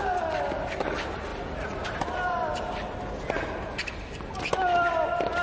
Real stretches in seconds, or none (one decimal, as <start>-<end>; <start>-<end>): 0.0-1.3; 2.7-5.4